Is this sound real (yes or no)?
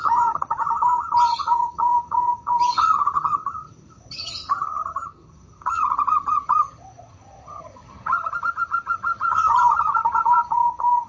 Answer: no